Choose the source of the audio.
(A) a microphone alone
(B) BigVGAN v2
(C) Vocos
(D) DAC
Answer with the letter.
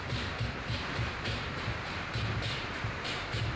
B